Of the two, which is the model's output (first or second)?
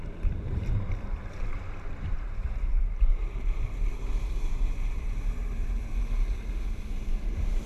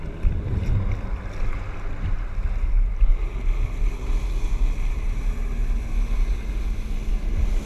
first